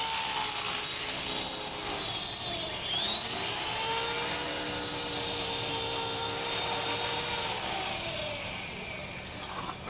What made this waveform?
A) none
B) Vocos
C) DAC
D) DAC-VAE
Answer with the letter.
A